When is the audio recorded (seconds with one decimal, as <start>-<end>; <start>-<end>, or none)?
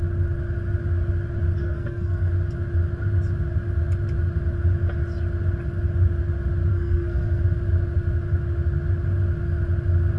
0.0-1.6; 2.3-6.7; 7.4-10.2